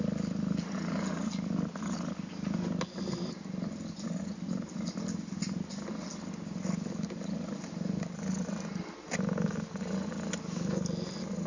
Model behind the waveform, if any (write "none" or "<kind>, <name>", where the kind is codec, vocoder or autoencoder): none